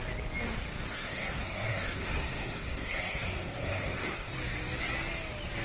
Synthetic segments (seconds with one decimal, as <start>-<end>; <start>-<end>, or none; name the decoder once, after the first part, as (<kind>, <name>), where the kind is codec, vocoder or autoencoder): 0.9-4.3 (codec, SNAC)